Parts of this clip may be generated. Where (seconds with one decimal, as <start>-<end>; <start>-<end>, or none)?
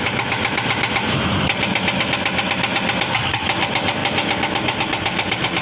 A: none